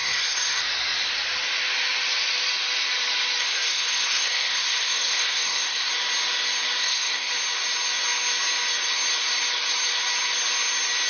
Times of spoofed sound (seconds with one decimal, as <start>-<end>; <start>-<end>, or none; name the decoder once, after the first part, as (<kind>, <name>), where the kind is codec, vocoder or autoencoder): 0.0-0.6 (codec, SNAC); 3.4-5.9; 6.8-7.3